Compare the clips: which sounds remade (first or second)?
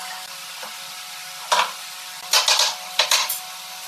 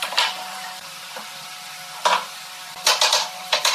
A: second